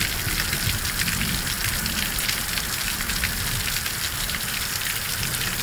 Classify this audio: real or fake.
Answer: real